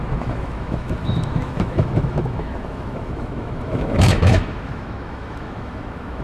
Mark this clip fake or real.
fake